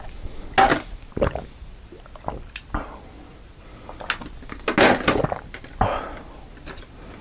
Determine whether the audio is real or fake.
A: real